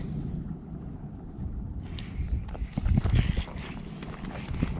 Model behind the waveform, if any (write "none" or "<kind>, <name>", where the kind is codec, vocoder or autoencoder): none